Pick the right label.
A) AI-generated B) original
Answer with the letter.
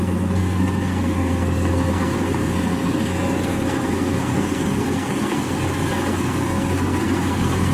A